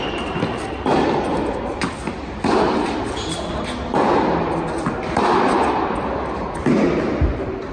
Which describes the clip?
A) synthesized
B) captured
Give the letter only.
B